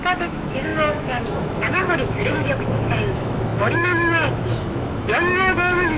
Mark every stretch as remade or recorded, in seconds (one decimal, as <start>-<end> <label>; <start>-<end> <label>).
0.0-6.0 remade